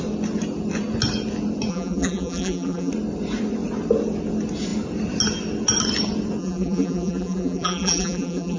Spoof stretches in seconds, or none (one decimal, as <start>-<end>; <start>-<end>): 1.7-2.9; 6.4-8.6